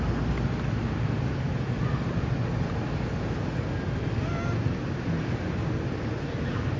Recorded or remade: recorded